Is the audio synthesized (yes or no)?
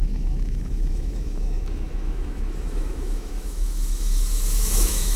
yes